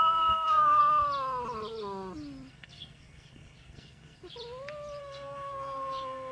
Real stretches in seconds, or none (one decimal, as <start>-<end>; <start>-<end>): 0.8-2.5; 4.2-5.0

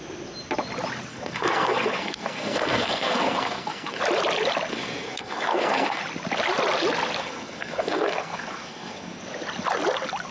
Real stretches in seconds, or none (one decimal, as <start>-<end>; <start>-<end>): 0.0-1.1; 4.0-4.7; 6.0-7.2; 9.2-10.3

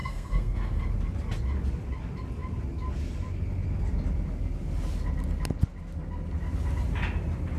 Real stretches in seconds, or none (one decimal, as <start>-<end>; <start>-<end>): 0.8-7.6

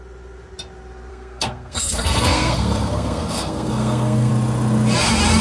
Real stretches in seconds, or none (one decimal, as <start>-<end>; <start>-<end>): 0.0-1.1; 4.3-5.4

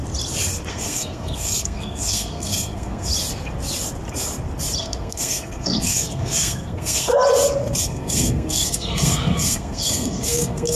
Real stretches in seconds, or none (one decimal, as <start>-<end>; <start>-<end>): 0.0-0.7; 3.1-4.8; 7.1-7.8